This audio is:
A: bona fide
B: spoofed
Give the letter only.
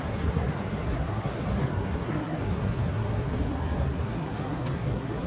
B